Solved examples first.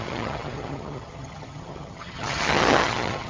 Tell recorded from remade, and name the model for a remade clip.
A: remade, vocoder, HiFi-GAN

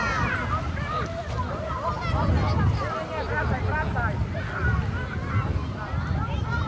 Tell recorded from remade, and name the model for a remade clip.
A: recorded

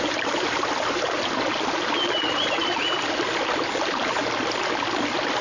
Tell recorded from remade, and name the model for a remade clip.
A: recorded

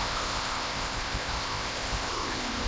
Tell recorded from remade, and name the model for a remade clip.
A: remade, codec, ZipCodec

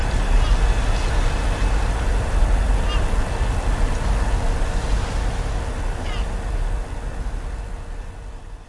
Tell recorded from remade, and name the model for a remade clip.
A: recorded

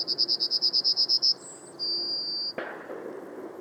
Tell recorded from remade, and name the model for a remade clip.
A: recorded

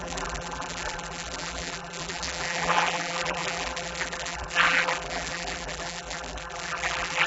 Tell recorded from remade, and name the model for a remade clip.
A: remade, vocoder, BigVGAN v2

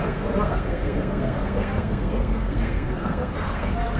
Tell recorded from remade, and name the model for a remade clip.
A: remade, codec, SNAC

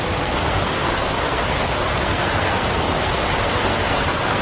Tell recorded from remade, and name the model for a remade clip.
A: remade, codec, SNAC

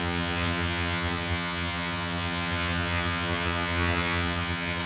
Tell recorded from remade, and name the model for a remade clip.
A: remade, vocoder, HiFi-GAN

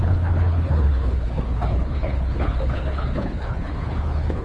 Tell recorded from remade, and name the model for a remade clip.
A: remade, codec, HILCodec